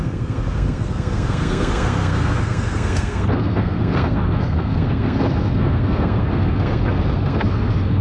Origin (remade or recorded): remade